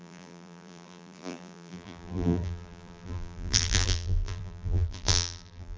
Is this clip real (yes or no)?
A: no